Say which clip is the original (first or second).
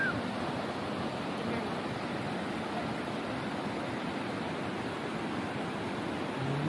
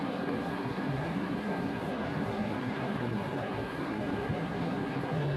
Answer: first